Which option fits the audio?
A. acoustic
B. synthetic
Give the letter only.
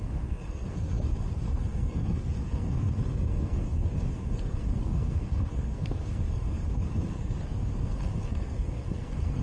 B